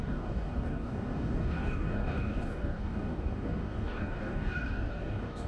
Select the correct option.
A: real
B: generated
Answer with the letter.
B